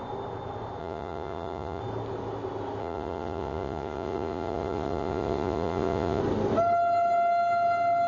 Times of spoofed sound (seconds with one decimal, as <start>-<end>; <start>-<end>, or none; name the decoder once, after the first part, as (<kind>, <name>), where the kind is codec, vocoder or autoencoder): 0.8-1.8 (vocoder, Vocos); 2.8-6.2